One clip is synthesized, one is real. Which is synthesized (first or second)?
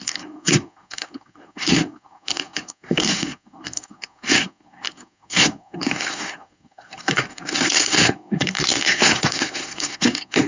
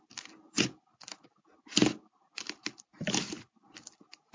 first